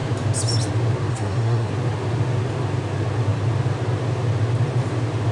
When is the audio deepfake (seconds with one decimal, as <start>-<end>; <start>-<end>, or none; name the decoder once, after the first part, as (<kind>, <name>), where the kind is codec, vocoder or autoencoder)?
1.1-1.7 (codec, SNAC)

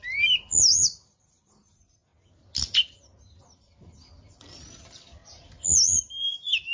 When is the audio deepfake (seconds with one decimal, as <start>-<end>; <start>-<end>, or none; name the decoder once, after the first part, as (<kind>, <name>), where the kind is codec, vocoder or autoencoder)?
none

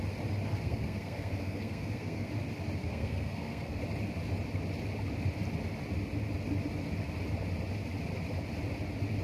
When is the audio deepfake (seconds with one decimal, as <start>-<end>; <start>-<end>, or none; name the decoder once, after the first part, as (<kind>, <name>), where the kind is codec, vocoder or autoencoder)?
0.5-2.3 (codec, SNAC); 2.8-3.8

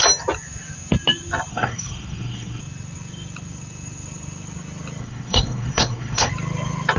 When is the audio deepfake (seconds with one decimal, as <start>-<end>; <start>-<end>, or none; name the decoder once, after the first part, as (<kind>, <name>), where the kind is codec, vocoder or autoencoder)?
1.5-2.6 (codec, SNAC); 5.0-6.3

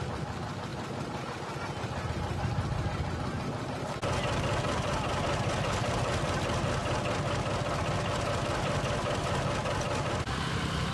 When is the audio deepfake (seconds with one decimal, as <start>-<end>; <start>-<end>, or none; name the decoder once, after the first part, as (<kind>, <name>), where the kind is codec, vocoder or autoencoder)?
none

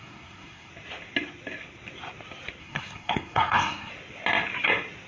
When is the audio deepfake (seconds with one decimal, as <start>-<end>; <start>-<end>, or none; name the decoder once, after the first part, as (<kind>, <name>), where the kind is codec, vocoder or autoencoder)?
0.0-0.7 (codec, SNAC); 2.6-3.9

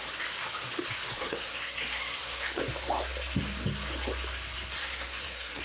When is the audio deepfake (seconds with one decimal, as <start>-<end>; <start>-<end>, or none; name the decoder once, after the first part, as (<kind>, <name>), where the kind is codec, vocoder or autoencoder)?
1.2-2.6 (codec, SNAC); 4.8-5.6